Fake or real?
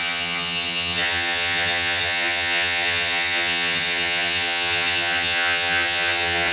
fake